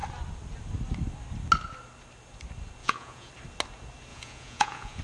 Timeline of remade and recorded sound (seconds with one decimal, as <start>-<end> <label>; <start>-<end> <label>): 0.0-2.8 recorded; 2.8-3.3 remade; 3.3-4.1 recorded; 4.1-5.0 remade